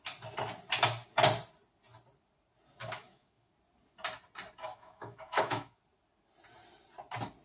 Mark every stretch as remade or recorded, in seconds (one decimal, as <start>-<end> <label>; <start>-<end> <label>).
0.0-2.8 recorded; 2.8-3.5 remade; 3.5-4.7 recorded; 4.7-5.8 remade; 5.8-7.4 recorded